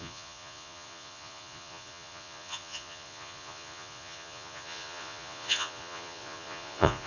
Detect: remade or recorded remade